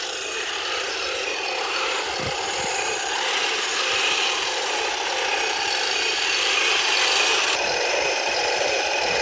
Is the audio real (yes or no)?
yes